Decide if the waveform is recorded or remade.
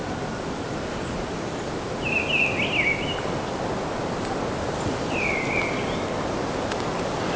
recorded